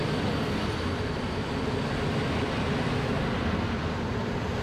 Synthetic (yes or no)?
no